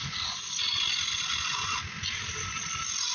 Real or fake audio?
real